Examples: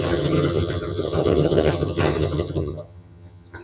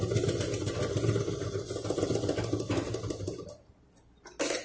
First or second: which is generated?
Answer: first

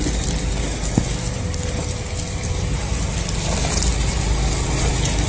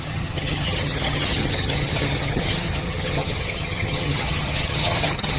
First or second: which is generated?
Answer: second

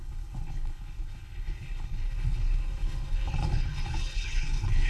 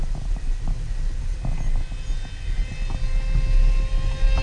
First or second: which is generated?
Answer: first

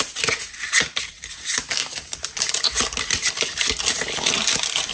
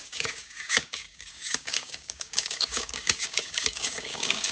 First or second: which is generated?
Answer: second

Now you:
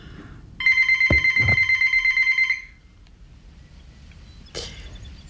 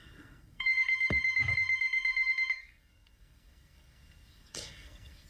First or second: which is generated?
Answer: second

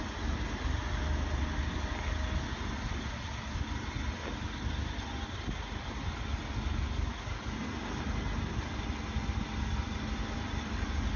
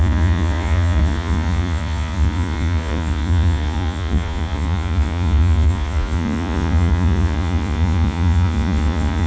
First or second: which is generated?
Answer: second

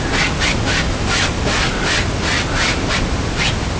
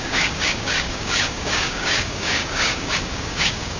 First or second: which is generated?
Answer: second